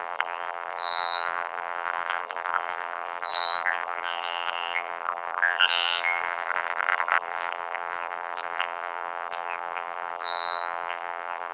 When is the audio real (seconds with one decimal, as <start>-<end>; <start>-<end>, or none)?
none